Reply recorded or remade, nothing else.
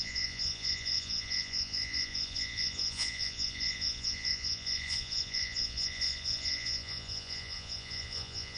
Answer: remade